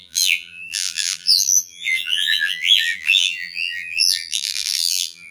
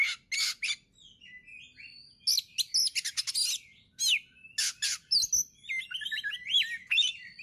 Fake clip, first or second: first